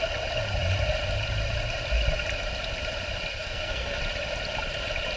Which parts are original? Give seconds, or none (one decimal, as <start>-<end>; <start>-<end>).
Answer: 0.0-3.3; 4.0-5.2